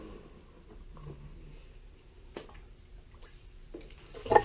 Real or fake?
real